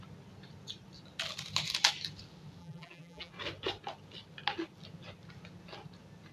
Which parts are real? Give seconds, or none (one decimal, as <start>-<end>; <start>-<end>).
0.0-2.6; 3.3-6.3